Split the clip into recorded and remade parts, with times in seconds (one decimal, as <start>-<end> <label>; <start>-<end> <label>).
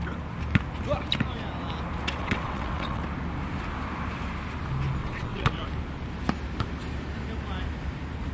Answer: 0.0-2.2 recorded; 2.2-3.0 remade; 3.0-5.0 recorded; 5.0-5.6 remade; 5.6-8.3 recorded